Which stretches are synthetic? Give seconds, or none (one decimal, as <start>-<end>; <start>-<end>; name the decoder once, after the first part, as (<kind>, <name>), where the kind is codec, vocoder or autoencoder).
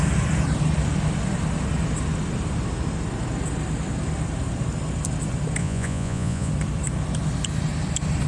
5.6-6.5 (vocoder, Vocos)